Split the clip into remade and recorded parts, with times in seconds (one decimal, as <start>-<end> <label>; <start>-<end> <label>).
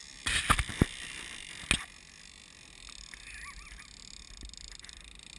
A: 0.0-5.4 recorded